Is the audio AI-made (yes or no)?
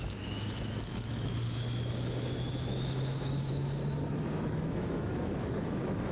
yes